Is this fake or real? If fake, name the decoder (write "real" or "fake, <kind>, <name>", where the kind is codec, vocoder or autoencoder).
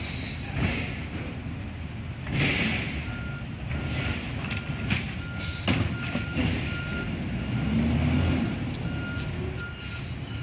real